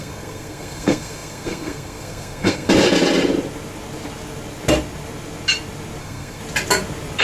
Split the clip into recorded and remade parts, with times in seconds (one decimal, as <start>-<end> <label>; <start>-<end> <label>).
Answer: 0.0-2.7 remade; 2.7-6.0 recorded; 6.0-6.4 remade; 6.4-7.2 recorded